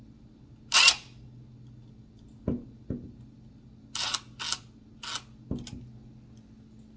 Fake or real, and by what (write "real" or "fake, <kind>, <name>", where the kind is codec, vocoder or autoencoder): real